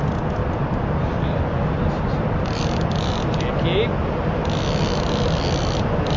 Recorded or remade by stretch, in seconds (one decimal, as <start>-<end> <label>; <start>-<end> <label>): 0.0-0.4 recorded; 0.4-3.2 remade; 3.2-6.2 recorded